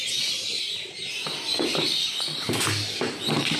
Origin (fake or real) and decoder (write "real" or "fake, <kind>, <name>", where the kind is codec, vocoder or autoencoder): real